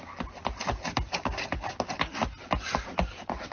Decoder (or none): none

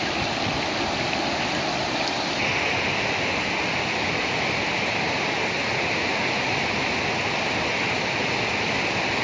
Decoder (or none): none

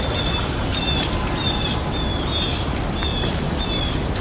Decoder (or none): none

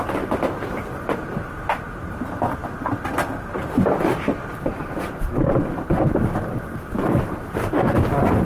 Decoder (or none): vocoder, BigVGAN v2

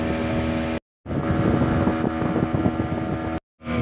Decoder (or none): none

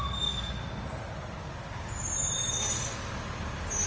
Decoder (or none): none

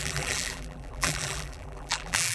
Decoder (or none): vocoder, BigVGAN v2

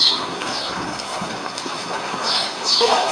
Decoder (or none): codec, SNAC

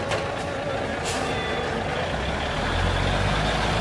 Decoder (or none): none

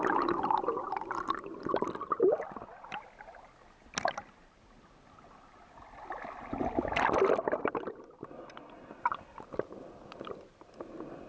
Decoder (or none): none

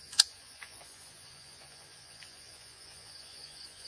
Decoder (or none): vocoder, Vocos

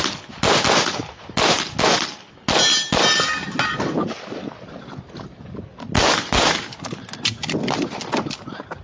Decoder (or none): none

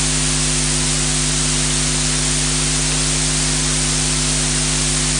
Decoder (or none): none